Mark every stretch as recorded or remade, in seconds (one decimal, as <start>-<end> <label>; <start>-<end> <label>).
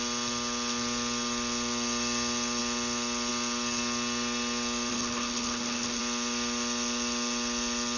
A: 0.0-4.9 recorded; 4.9-6.0 remade; 6.0-8.0 recorded